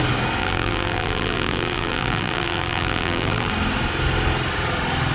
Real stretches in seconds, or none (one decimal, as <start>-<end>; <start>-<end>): 0.0-0.4; 3.5-5.1